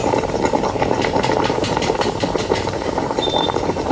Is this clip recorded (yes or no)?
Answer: no